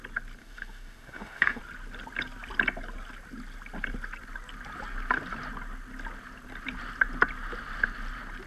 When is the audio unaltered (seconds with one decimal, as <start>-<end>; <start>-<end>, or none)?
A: 0.0-0.4; 1.6-8.5

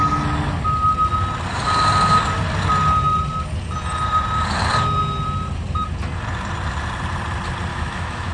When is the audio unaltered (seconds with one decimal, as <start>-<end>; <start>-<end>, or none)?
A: 0.0-7.7